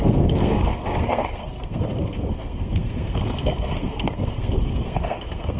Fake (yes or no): yes